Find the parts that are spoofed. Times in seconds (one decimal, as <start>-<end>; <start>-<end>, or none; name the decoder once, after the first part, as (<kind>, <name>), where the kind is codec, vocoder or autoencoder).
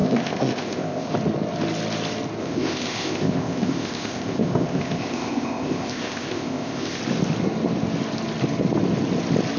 0.0-1.1 (codec, ZipCodec); 2.4-7.0